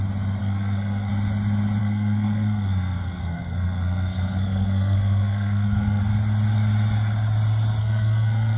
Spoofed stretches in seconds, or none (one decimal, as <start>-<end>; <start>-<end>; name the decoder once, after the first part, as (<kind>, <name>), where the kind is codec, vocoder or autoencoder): 0.4-1.1 (codec, SNAC); 1.8-6.0; 7.8-8.6